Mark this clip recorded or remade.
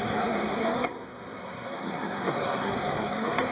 remade